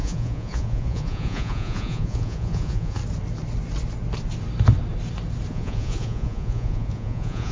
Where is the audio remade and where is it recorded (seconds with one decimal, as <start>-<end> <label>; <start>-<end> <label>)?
0.0-3.0 remade; 3.0-5.5 recorded; 5.5-7.5 remade